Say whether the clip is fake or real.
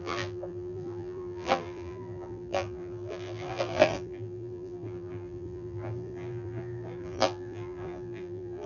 fake